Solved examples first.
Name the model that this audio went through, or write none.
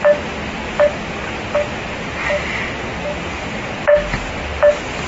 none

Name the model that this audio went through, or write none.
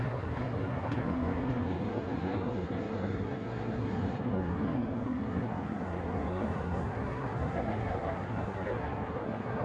codec, SNAC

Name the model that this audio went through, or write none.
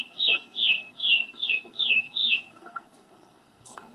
codec, SNAC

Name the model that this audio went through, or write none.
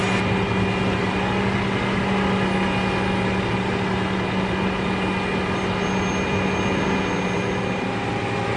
none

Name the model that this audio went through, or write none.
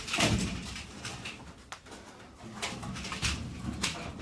vocoder, BigVGAN v2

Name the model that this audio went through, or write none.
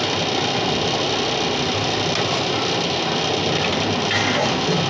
none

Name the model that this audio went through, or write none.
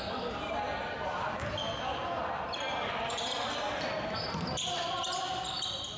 none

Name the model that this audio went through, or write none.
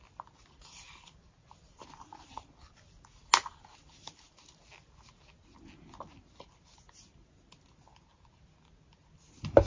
none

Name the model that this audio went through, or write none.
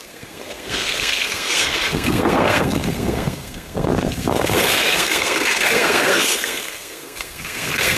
codec, SNAC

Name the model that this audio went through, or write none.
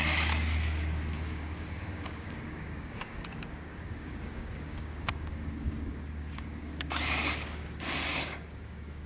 codec, DAC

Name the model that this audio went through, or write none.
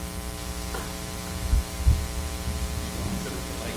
none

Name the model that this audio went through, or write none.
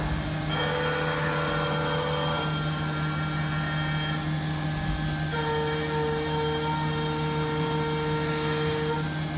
none